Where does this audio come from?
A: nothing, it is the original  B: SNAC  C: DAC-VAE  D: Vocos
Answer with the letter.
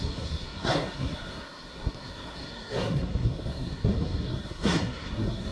B